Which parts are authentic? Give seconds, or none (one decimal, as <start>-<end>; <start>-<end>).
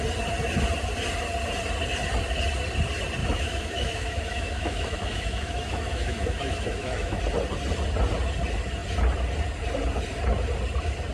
0.0-3.2; 7.2-11.1